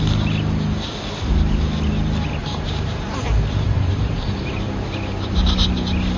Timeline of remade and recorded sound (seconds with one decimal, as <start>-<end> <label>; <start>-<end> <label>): 0.0-2.4 recorded; 2.4-5.5 remade; 5.5-6.2 recorded